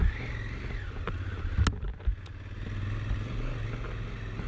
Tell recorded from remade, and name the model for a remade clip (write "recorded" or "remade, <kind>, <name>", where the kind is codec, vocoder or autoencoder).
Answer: recorded